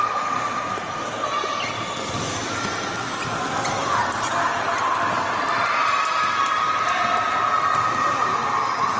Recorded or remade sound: recorded